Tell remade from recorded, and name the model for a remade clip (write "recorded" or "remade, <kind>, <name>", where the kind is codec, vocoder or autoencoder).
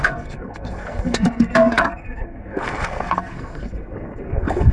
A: remade, codec, SNAC